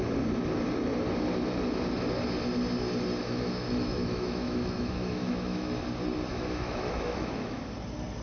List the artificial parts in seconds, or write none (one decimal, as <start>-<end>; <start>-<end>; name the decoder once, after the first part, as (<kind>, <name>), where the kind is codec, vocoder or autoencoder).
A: 3.2-5.8 (autoencoder, DAC-VAE); 6.3-7.6